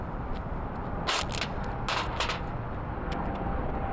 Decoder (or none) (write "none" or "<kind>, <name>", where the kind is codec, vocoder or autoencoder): none